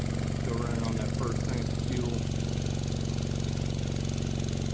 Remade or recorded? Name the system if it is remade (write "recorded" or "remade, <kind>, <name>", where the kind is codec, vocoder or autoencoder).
recorded